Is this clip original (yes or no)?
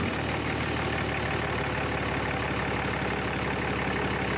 yes